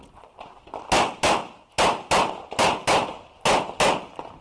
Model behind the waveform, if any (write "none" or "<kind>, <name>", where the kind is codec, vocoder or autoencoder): none